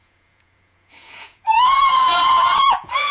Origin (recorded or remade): remade